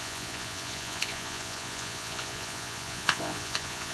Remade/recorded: remade